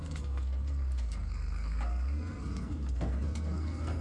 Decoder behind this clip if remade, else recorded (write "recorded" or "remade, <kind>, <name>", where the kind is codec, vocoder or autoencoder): remade, codec, SNAC